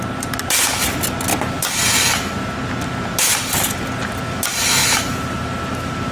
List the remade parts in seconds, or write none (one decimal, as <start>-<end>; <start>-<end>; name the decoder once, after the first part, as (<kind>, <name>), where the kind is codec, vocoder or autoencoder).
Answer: 4.8-6.1 (vocoder, BigVGAN v2)